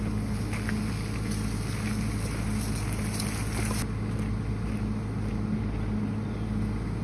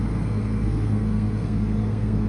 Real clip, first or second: first